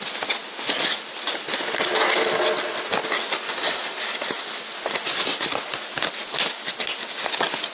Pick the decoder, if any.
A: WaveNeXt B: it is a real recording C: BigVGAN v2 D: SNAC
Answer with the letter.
B